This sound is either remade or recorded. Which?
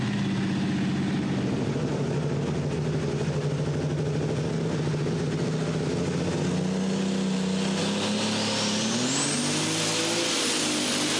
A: recorded